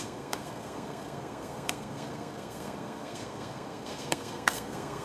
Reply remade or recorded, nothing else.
remade